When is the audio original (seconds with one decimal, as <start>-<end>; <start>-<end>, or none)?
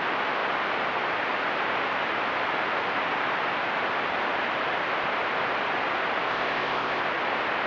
0.0-6.3; 7.0-7.7